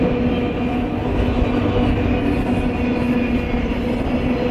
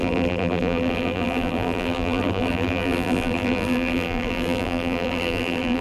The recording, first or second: first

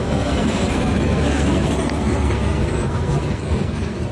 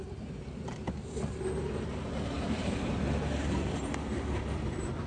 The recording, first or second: second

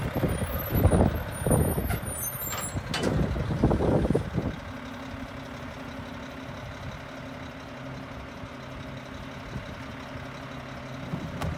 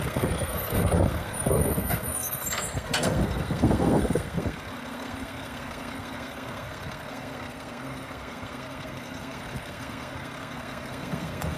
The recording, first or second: first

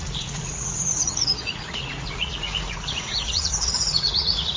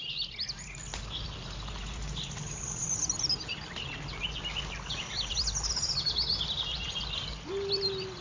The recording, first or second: second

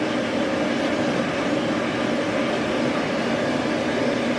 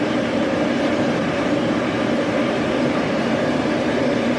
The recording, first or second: first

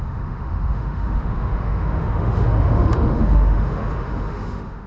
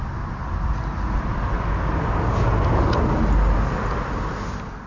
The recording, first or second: second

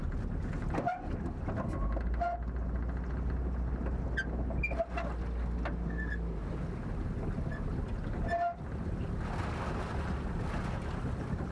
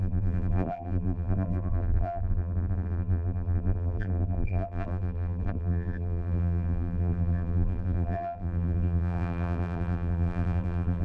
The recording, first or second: first